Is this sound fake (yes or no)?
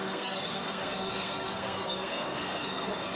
yes